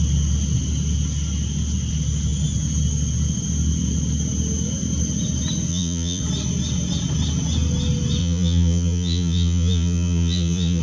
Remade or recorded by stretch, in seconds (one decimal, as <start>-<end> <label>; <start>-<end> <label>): 0.0-5.7 recorded; 5.7-6.2 remade; 6.2-8.2 recorded; 8.2-10.8 remade